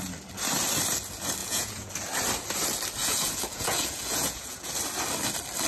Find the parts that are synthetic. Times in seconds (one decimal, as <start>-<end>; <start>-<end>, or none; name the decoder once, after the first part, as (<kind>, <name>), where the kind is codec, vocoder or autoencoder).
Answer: 1.4-1.9 (vocoder, Vocos); 3.0-4.7